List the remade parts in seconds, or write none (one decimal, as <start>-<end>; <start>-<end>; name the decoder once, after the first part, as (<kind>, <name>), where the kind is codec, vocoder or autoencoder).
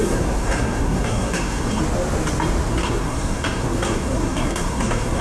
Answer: 0.0-1.8 (codec, SNAC); 2.7-5.2